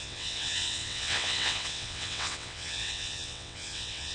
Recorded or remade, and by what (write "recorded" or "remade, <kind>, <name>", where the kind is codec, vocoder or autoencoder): remade, vocoder, WaveNeXt